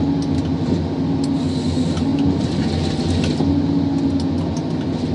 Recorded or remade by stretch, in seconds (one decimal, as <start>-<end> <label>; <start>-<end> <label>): 0.0-5.1 recorded